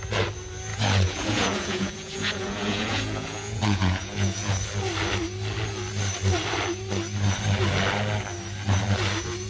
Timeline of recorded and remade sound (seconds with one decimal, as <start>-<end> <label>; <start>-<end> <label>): 0.0-0.7 recorded; 0.7-4.5 remade; 4.5-9.5 recorded